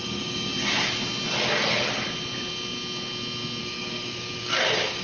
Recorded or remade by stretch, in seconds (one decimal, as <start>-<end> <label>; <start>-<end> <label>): 0.0-0.6 remade; 0.6-3.6 recorded; 3.6-5.0 remade